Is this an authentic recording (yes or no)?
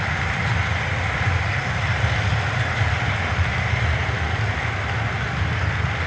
yes